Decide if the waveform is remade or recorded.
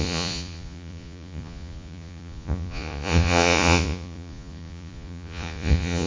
remade